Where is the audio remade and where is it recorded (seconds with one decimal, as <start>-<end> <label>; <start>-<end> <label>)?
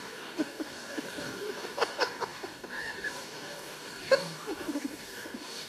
0.0-5.7 remade